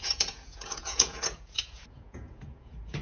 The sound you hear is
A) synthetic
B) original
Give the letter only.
A